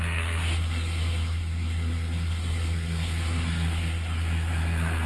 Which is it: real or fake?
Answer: fake